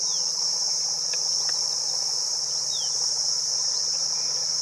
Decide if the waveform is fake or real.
real